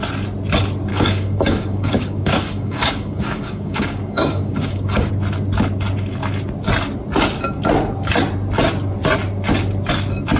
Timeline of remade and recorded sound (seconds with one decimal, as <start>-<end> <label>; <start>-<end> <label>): 0.0-0.9 recorded; 0.9-5.1 remade; 5.1-10.4 recorded